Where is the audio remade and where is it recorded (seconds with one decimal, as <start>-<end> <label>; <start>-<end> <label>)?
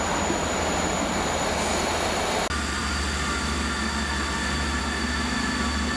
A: 0.0-6.0 recorded